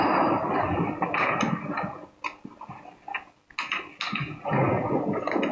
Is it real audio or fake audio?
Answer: real